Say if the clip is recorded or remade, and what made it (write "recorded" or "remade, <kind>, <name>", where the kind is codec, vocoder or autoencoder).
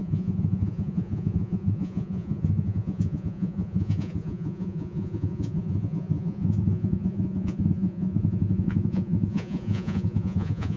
remade, vocoder, Vocos